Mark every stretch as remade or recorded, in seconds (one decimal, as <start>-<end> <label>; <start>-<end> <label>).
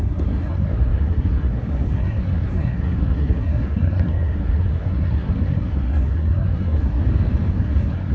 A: 0.0-7.0 remade; 7.0-7.5 recorded; 7.5-8.1 remade